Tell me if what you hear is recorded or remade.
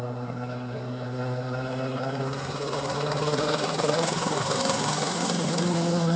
remade